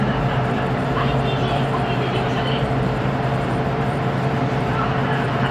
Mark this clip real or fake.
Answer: fake